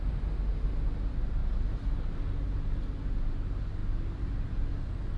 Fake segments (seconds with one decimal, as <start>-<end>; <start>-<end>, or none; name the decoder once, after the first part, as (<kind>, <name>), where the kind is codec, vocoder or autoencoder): none